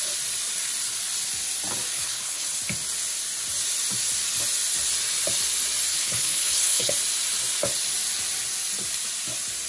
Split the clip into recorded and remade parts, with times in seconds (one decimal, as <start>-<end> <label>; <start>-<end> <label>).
0.0-1.9 recorded; 1.9-2.6 remade; 2.6-5.9 recorded; 5.9-6.9 remade; 6.9-9.7 recorded